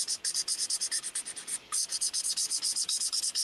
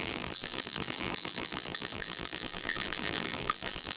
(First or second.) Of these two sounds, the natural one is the first